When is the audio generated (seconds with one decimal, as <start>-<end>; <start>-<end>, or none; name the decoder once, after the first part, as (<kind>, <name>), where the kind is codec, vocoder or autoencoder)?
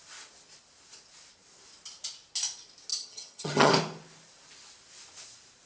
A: 2.9-3.7 (vocoder, HiFi-GAN)